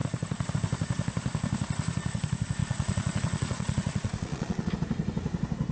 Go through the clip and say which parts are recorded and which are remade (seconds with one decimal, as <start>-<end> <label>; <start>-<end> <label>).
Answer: 0.0-2.6 recorded; 2.6-4.7 remade; 4.7-5.7 recorded